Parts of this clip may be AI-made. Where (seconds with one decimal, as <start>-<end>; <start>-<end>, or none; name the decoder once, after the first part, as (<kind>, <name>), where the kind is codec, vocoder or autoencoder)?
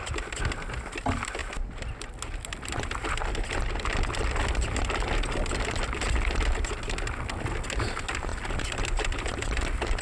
none